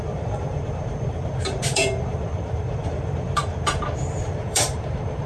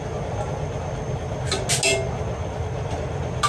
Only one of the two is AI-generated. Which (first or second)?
first